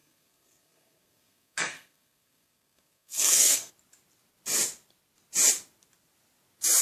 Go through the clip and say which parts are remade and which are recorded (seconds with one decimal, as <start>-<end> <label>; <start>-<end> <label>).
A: 0.0-3.7 remade; 3.7-6.8 recorded